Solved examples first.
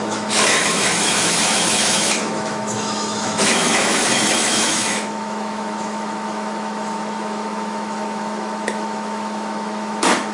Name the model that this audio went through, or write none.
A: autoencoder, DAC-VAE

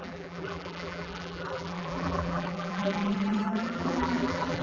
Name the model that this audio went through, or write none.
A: vocoder, BigVGAN v2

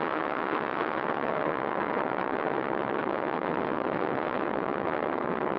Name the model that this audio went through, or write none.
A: vocoder, WaveNeXt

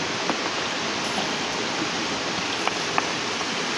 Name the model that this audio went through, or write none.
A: vocoder, BigVGAN v2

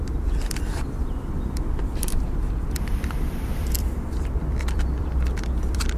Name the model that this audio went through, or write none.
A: vocoder, BigVGAN v2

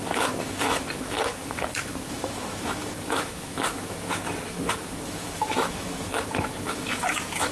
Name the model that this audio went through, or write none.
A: autoencoder, DAC-VAE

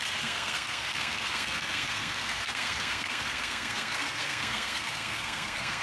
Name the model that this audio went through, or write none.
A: codec, SNAC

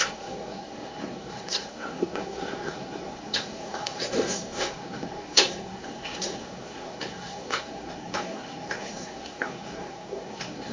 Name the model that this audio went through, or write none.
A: codec, SNAC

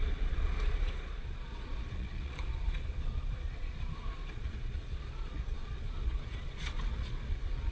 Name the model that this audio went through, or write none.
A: vocoder, Vocos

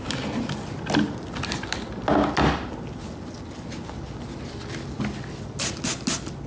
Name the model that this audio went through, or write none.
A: none